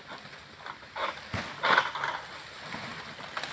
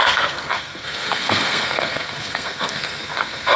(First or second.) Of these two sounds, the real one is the first